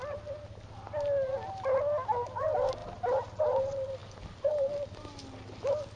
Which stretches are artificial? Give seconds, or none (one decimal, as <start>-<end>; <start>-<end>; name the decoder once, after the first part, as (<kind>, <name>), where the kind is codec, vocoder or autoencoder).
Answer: none